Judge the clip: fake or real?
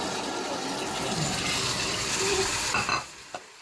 real